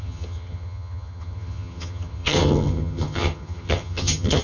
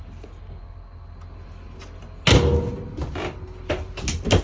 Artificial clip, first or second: first